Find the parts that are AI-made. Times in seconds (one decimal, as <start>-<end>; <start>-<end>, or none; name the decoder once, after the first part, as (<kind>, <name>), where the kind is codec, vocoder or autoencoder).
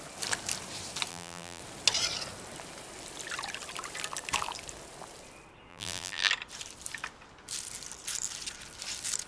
1.1-1.6 (vocoder, BigVGAN v2); 5.7-6.3